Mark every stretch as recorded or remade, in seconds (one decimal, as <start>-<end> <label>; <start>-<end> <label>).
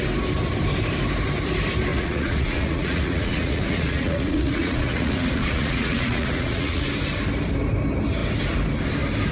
0.0-1.9 recorded; 1.9-6.9 remade; 6.9-9.3 recorded